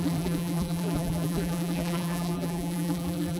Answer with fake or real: fake